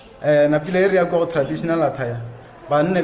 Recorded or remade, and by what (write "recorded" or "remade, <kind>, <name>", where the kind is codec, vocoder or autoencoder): recorded